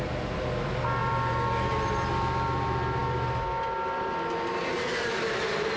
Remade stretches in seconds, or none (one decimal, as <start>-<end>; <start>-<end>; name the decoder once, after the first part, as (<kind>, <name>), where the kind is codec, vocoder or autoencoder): none